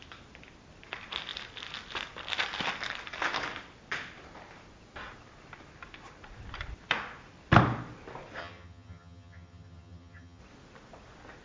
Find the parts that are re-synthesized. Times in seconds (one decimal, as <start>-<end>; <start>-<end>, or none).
8.4-10.4